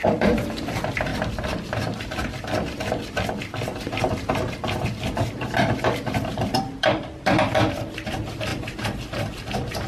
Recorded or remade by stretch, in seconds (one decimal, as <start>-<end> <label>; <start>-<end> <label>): 0.0-1.1 remade; 1.1-5.8 recorded; 5.8-9.9 remade